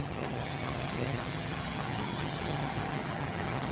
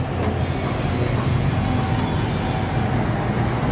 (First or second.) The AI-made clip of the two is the first